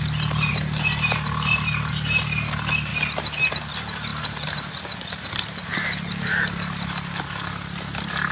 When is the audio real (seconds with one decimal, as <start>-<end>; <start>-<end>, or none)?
0.0-0.5; 2.2-4.1; 7.0-8.3